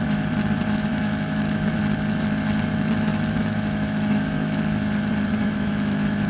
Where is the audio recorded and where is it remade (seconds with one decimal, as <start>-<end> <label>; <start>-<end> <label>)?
0.0-0.9 recorded; 0.9-1.8 remade; 1.8-3.1 recorded; 3.1-4.6 remade; 4.6-5.4 recorded; 5.4-6.3 remade